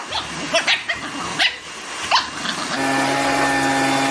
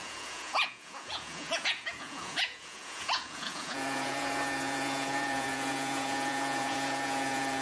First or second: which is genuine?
first